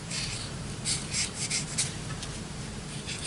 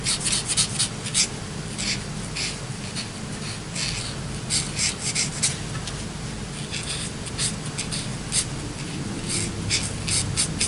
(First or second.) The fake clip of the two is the first